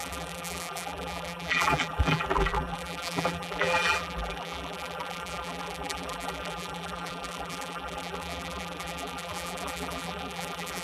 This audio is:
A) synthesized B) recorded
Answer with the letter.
A